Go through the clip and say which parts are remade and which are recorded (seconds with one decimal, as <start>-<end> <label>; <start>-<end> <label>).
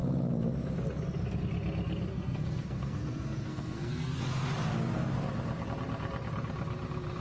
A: 0.0-2.1 recorded; 2.1-4.2 remade; 4.2-7.2 recorded